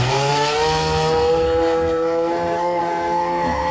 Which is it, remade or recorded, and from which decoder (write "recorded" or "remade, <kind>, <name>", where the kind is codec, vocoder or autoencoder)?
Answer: remade, codec, SNAC